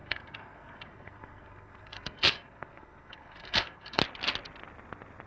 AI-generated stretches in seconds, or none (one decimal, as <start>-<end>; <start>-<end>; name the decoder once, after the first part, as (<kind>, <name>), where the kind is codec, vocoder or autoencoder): 0.0-4.0 (codec, SNAC)